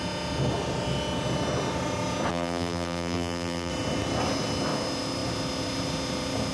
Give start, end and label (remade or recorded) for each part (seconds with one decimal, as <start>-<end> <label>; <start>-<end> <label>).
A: 0.0-2.3 recorded; 2.3-3.7 remade; 3.7-6.5 recorded